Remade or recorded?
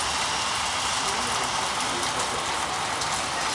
recorded